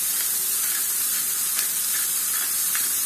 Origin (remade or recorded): recorded